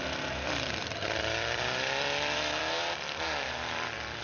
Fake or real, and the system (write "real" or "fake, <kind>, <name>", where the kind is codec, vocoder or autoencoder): fake, vocoder, BigVGAN v2